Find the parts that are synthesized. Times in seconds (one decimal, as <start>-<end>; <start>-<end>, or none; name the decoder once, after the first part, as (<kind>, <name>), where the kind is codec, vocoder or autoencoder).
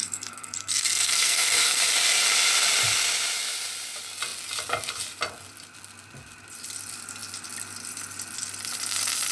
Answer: 0.0-1.8 (codec, SNAC)